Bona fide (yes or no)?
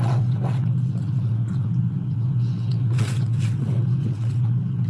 no